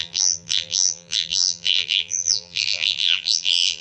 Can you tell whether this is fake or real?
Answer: fake